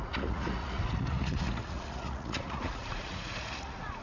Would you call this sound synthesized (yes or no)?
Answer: yes